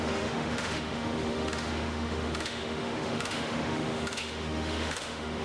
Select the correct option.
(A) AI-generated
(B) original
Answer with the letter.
A